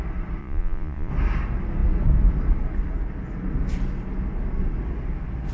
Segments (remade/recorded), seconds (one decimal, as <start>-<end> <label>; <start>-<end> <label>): 0.0-0.4 recorded; 0.4-1.1 remade; 1.1-5.5 recorded